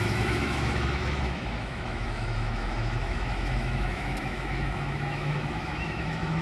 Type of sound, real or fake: fake